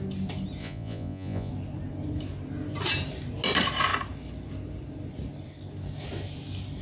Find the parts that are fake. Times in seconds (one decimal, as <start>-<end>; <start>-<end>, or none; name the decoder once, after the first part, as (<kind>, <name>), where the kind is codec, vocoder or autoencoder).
0.6-1.5 (vocoder, Vocos)